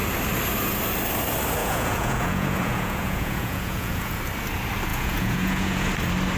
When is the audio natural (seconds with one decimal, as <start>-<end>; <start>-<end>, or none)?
0.0-1.6; 4.2-4.9; 5.9-6.4